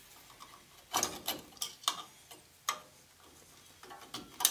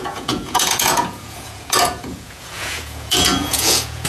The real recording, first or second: first